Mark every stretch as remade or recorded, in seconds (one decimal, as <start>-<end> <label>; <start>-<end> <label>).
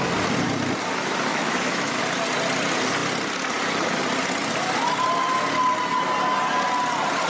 0.0-1.3 recorded; 1.3-2.0 remade; 2.0-7.3 recorded